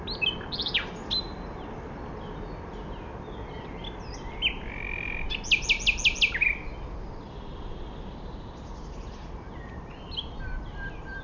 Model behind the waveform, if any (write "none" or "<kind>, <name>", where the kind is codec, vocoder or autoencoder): none